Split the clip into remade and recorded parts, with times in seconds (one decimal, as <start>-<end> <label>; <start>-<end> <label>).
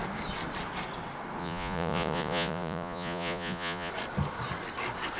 0.0-1.4 recorded; 1.4-3.9 remade; 3.9-5.2 recorded